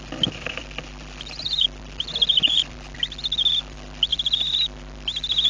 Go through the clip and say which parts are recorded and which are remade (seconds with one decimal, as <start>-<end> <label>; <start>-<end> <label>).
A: 0.0-5.5 recorded